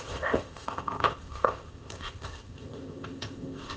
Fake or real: fake